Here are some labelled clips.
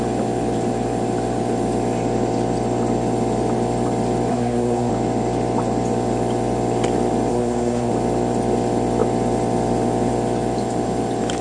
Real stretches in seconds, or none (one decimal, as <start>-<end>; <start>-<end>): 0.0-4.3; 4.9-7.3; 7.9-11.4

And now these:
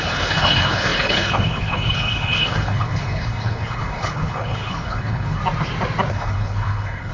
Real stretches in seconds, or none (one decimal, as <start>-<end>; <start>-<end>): 5.4-6.1

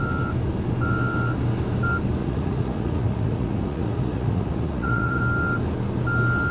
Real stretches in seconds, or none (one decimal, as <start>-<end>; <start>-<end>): 0.0-2.2; 5.2-6.5

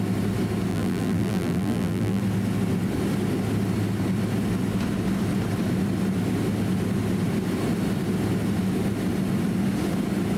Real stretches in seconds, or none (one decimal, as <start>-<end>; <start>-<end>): 0.0-0.7; 2.2-10.4

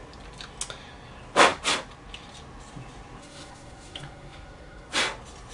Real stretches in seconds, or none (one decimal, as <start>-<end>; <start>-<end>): 0.0-3.2; 4.9-5.5